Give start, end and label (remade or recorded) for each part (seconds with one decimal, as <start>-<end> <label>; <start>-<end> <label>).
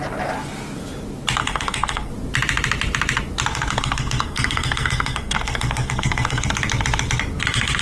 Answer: 0.0-1.4 recorded; 1.4-2.1 remade; 2.1-3.5 recorded; 3.5-6.5 remade; 6.5-7.8 recorded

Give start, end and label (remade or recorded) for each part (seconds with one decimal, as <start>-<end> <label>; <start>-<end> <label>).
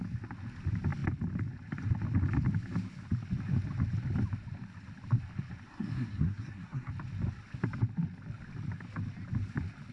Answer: 0.0-5.7 recorded; 5.7-6.9 remade; 6.9-9.9 recorded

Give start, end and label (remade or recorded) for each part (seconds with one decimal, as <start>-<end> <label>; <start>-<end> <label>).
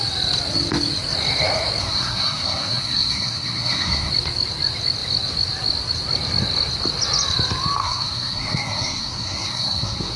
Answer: 0.0-1.8 recorded; 1.8-4.1 remade; 4.1-7.8 recorded; 7.8-10.2 remade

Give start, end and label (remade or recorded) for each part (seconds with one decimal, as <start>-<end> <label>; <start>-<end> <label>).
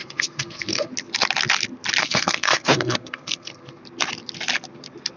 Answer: 0.0-0.9 remade; 0.9-2.0 recorded; 2.0-3.8 remade; 3.8-5.2 recorded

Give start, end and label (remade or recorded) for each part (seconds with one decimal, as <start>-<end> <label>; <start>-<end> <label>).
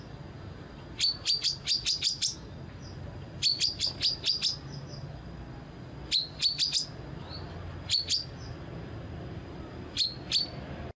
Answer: 0.0-11.0 recorded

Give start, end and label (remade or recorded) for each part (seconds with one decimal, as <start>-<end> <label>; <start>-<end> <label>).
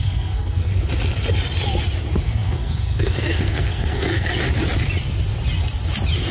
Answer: 0.0-0.7 remade; 0.7-2.2 recorded; 2.2-4.3 remade; 4.3-6.3 recorded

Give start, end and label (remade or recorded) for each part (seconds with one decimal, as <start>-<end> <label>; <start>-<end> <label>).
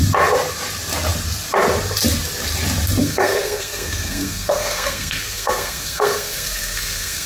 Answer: 0.0-3.0 recorded; 3.0-7.3 remade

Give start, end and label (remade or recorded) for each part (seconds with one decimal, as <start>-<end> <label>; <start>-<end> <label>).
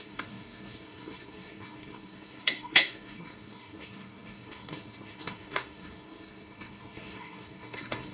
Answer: 0.0-8.1 remade